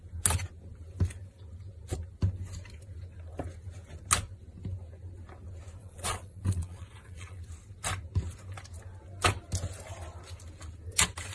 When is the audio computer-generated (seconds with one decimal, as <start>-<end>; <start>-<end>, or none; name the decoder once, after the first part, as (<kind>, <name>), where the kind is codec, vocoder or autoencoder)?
5.8-7.4 (vocoder, Vocos)